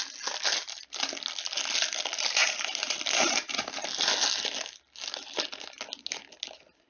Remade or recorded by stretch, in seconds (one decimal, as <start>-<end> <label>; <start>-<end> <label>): 0.0-2.4 recorded; 2.4-3.9 remade; 3.9-6.9 recorded